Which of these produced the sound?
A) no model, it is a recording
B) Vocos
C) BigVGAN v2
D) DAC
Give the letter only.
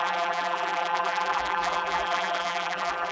C